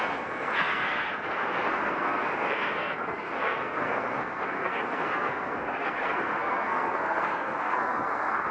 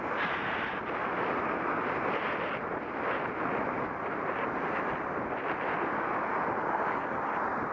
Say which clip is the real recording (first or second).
second